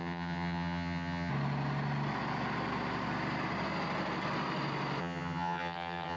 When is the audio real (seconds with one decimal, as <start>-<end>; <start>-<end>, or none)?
1.3-5.0